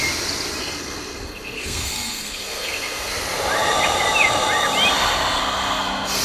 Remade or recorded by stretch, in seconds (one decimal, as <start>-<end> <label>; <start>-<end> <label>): 0.0-0.6 recorded; 0.6-3.1 remade; 3.1-5.4 recorded; 5.4-6.2 remade